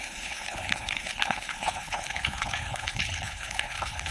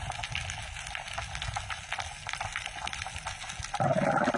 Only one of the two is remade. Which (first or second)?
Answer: first